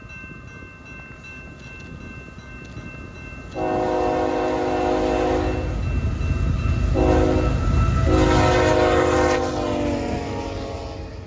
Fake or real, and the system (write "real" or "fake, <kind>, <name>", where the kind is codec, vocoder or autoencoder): real